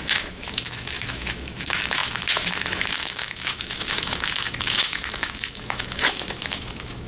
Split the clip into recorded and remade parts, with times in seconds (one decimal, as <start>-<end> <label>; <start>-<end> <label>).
0.0-7.1 remade